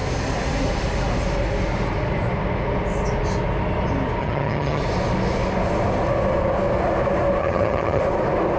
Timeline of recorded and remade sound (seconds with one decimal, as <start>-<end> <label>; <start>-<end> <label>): 0.0-4.2 recorded; 4.2-4.8 remade; 4.8-7.4 recorded; 7.4-8.0 remade; 8.0-8.6 recorded